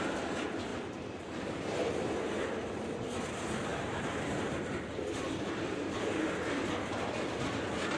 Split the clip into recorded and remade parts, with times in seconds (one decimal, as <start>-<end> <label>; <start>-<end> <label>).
0.0-0.7 recorded; 0.7-1.5 remade; 1.5-3.7 recorded; 3.7-7.5 remade; 7.5-8.0 recorded